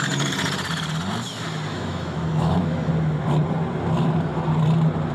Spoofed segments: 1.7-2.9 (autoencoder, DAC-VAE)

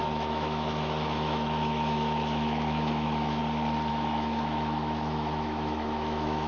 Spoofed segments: 0.0-3.4 (autoencoder, DAC-VAE); 3.9-6.5

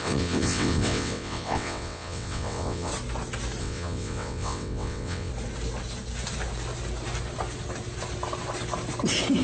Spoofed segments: 0.0-2.9 (vocoder, WaveNeXt); 3.6-5.3

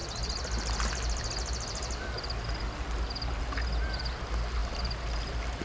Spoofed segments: none

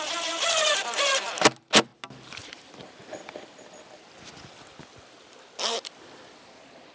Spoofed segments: none

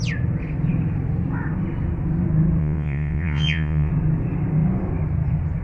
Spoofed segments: 2.6-3.9 (vocoder, Vocos)